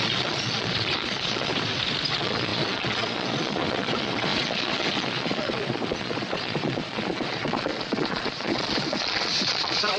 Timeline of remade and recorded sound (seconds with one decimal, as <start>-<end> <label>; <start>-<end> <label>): 0.0-1.5 remade; 1.5-2.1 recorded; 2.1-10.0 remade